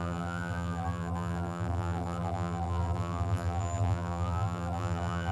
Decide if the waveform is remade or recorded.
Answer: remade